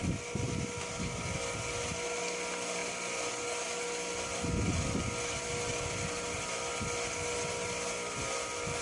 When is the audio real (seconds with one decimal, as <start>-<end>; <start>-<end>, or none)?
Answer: 0.0-8.8